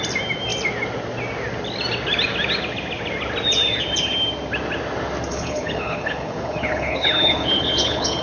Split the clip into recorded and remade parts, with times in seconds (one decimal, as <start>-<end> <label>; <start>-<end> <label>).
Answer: 0.0-5.3 recorded; 5.3-8.2 remade